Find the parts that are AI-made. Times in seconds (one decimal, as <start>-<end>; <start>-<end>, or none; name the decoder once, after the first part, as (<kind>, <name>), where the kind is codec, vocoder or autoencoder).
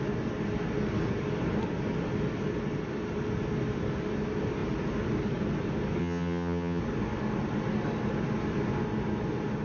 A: 6.0-6.8 (vocoder, HiFi-GAN)